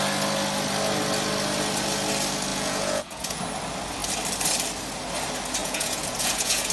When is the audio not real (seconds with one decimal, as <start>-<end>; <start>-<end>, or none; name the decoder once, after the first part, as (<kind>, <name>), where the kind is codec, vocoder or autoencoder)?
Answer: 2.5-3.4 (vocoder, Vocos); 5.6-6.7